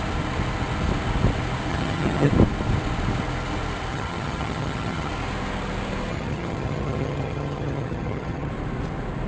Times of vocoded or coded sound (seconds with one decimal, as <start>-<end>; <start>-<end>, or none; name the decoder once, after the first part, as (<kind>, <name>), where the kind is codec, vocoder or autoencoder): 1.7-2.3 (vocoder, HiFi-GAN); 3.9-5.1; 6.1-8.5